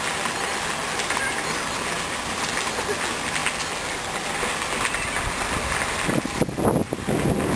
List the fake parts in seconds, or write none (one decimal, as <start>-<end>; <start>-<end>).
none